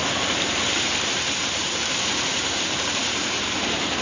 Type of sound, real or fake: fake